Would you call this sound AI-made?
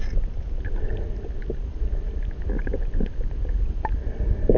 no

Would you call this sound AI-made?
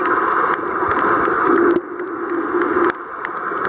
no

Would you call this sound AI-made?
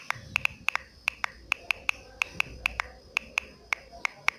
yes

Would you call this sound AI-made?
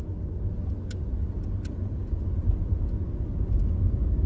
no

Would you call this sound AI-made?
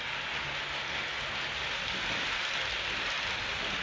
no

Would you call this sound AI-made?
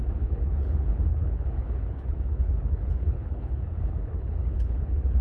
yes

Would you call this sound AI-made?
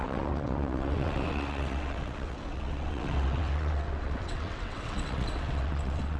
yes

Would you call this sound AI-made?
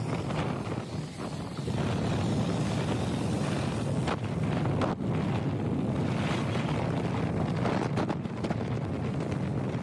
no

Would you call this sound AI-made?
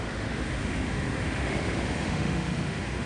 yes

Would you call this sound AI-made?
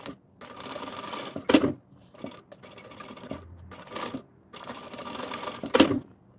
no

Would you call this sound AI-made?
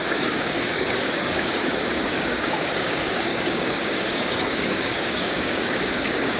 yes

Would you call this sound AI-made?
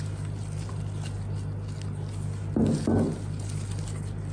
no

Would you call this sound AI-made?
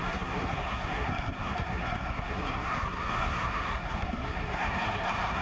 yes